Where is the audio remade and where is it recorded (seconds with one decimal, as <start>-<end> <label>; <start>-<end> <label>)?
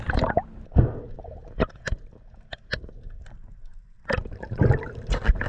0.0-5.5 recorded